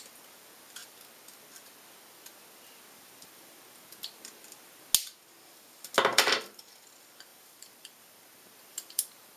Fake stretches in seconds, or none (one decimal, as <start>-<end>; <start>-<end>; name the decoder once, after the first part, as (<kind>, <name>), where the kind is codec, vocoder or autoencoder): 6.1-6.6 (vocoder, BigVGAN v2); 7.3-9.4